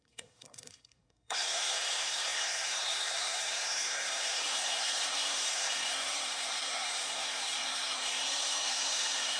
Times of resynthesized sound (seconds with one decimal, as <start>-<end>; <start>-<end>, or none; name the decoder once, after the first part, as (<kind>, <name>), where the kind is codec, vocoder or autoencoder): 0.0-9.4 (codec, SNAC)